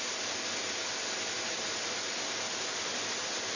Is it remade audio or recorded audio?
recorded